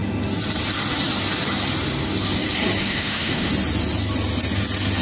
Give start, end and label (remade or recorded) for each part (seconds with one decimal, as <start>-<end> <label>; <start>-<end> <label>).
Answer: 0.0-2.8 recorded; 2.8-3.5 remade; 3.5-5.0 recorded